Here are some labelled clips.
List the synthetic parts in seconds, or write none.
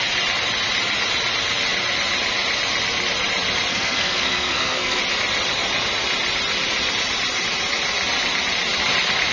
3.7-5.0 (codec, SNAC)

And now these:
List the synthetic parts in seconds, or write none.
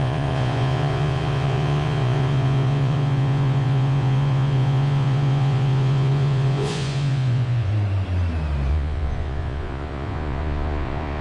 0.0-7.7 (vocoder, Vocos); 8.7-11.2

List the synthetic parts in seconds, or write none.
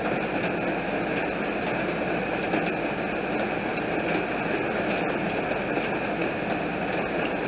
3.7-4.3 (vocoder, BigVGAN v2)